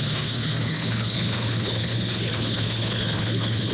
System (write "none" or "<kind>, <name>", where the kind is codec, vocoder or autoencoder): codec, HILCodec